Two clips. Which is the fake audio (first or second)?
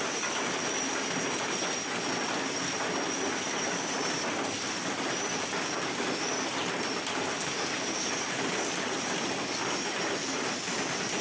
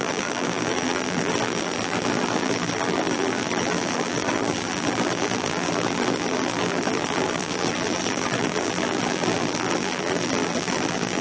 second